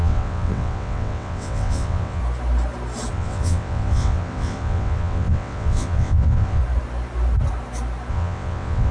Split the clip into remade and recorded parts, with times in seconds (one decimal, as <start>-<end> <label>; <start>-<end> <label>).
0.0-2.2 remade; 2.2-3.1 recorded; 3.1-6.6 remade; 6.6-8.1 recorded; 8.1-8.9 remade